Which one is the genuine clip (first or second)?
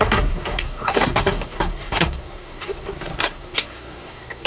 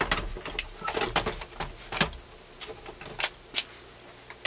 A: second